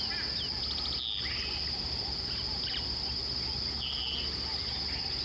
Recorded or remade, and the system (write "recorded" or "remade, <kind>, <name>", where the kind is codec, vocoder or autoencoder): recorded